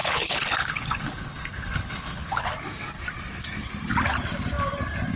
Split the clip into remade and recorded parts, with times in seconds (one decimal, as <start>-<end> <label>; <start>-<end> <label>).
0.0-2.5 remade; 2.5-5.2 recorded